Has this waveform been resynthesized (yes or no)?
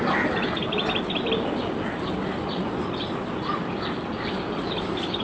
no